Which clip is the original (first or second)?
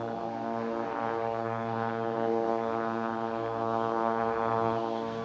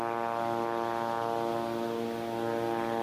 second